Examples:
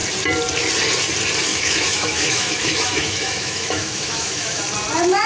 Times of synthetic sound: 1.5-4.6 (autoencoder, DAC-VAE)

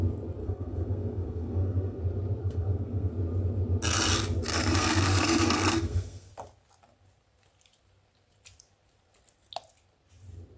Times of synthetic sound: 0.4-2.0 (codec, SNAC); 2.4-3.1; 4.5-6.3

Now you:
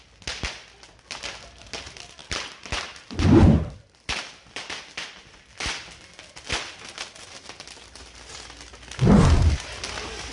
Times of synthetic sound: 2.2-6.5 (vocoder, BigVGAN v2)

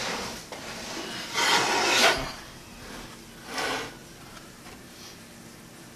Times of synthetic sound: 2.0-2.9 (vocoder, BigVGAN v2); 4.0-5.2

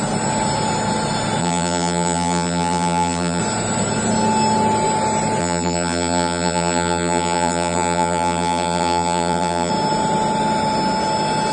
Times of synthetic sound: 1.4-3.4 (vocoder, BigVGAN v2); 5.4-9.7